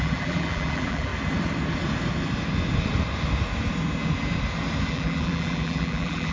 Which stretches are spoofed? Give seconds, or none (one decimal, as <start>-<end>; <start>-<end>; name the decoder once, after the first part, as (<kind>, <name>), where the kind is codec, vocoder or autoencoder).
0.0-1.1 (vocoder, BigVGAN v2); 4.9-6.3

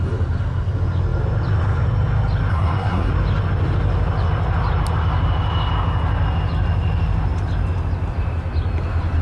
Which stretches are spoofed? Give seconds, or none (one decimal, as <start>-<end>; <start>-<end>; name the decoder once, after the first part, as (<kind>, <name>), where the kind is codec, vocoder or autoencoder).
2.5-3.1 (codec, SNAC)

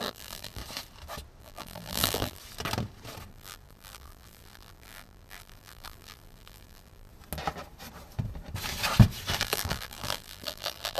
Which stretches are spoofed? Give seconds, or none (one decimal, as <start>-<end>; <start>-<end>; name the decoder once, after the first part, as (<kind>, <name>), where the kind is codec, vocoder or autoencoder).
0.0-0.6 (vocoder, BigVGAN v2); 1.4-2.4; 3.3-7.1; 9.4-11.0

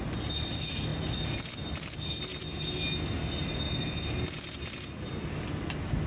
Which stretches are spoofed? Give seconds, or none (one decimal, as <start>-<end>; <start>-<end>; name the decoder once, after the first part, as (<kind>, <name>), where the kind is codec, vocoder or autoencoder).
none